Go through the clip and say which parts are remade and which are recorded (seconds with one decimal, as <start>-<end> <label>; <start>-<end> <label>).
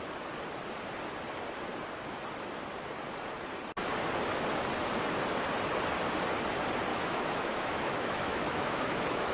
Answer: 0.0-6.9 recorded; 6.9-9.3 remade